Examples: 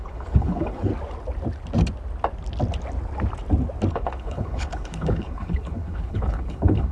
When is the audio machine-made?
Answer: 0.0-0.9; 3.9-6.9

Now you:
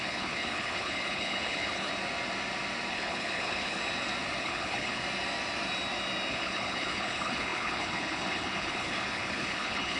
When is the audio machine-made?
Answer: 0.0-1.9; 2.9-3.8; 4.4-5.0; 6.3-10.0

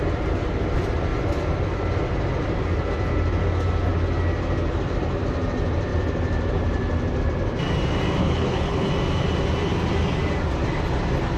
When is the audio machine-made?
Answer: 8.2-8.9

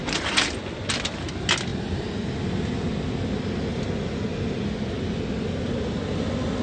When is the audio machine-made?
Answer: none

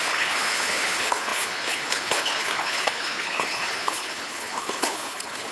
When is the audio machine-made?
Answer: 0.0-5.5